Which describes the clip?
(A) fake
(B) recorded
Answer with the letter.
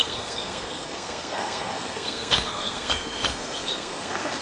A